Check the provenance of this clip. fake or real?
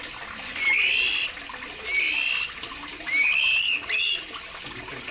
real